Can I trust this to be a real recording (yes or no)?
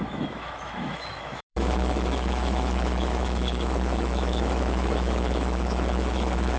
no